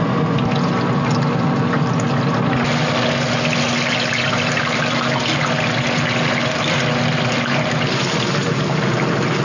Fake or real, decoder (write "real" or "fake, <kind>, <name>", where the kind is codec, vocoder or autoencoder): real